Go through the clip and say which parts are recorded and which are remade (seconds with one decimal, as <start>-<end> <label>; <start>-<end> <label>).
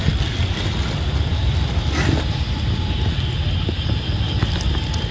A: 0.0-5.1 recorded